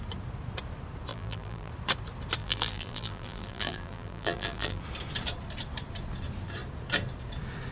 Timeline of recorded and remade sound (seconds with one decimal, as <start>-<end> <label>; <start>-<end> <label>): 0.0-1.1 recorded; 1.1-1.7 remade; 1.7-2.4 recorded; 2.4-4.8 remade; 4.8-7.7 recorded